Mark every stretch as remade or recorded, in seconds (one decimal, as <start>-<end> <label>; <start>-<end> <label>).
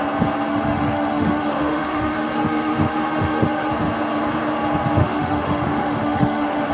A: 0.0-0.5 recorded; 0.5-3.7 remade; 3.7-5.0 recorded; 5.0-6.7 remade